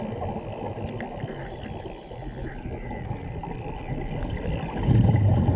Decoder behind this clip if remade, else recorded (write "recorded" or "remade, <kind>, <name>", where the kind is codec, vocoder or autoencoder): recorded